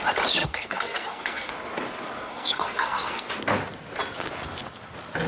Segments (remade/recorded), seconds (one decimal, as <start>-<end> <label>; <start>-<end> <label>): 0.0-0.4 recorded; 0.4-1.5 remade; 1.5-2.3 recorded; 2.3-3.3 remade; 3.3-5.3 recorded